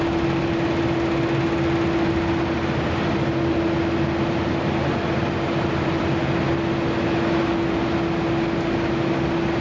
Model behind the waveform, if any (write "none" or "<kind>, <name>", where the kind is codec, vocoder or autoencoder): none